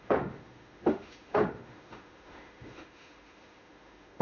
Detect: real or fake fake